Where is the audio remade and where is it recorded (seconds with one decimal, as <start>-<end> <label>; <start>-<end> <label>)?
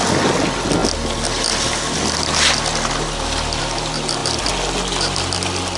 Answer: 0.0-5.8 recorded